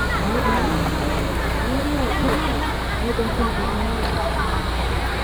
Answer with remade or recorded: recorded